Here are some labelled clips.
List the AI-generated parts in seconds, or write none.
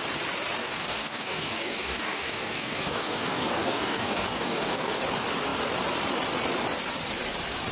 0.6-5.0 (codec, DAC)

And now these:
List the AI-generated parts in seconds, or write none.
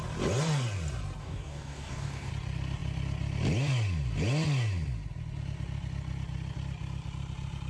1.2-2.3 (codec, DAC)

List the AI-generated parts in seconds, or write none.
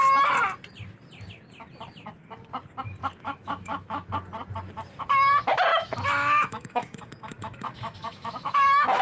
3.0-4.1 (autoencoder, DAC-VAE); 5.7-9.0